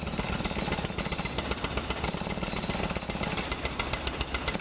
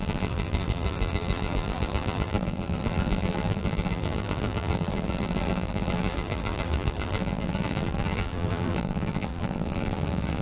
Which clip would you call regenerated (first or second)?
second